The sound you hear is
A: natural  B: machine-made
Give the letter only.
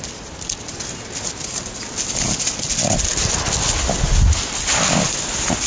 A